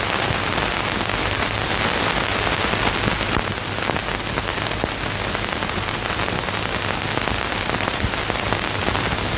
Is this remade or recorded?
recorded